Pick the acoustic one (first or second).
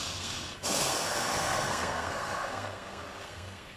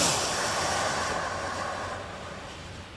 second